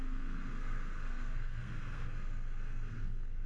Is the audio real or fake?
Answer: fake